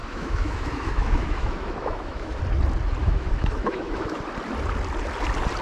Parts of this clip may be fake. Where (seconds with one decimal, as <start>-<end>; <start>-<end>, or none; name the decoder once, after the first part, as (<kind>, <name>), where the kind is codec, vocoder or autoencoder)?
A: 0.0-2.4 (autoencoder, DAC-VAE); 3.0-4.2